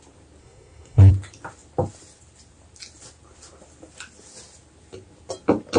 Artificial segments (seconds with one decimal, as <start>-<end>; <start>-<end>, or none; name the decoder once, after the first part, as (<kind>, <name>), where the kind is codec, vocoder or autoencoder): 0.4-1.1 (codec, SNAC)

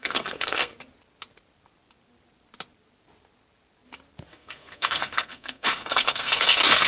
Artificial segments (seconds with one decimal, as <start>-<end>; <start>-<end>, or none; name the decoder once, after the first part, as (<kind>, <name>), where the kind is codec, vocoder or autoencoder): 0.0-0.7 (codec, SNAC); 4.3-6.9

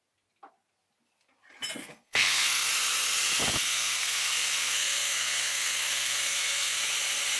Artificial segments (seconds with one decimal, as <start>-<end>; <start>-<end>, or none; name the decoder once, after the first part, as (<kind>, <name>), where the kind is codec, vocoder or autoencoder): 1.8-2.7 (codec, SNAC); 3.6-6.8

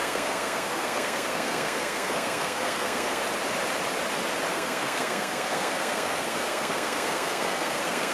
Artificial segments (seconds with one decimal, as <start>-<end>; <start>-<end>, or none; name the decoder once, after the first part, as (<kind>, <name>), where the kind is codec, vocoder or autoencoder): 0.0-3.2 (codec, SNAC); 4.5-8.1

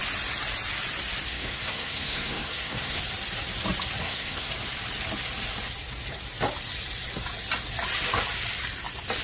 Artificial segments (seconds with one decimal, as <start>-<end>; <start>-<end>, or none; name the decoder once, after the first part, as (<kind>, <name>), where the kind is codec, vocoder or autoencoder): 1.3-3.0 (codec, SNAC); 4.0-4.5

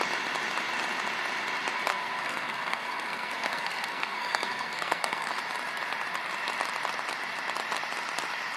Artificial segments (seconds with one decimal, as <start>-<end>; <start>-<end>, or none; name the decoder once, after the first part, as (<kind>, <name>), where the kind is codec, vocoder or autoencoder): 1.9-5.3 (codec, SNAC)

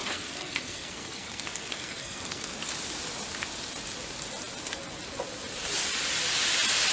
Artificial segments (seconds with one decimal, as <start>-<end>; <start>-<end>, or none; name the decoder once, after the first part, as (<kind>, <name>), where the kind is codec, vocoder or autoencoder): 0.0-2.5 (codec, SNAC)